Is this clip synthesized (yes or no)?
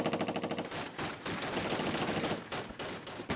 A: no